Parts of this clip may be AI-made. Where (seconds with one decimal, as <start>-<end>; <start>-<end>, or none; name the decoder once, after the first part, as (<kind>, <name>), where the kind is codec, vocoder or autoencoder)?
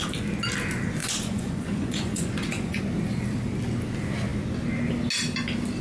1.0-2.8 (vocoder, Vocos)